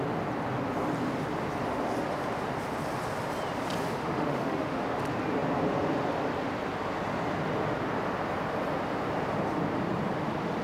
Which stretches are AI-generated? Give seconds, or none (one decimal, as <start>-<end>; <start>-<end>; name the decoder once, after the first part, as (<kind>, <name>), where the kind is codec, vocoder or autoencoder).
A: 4.0-4.8 (autoencoder, DAC-VAE)